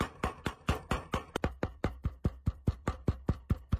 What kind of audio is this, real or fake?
fake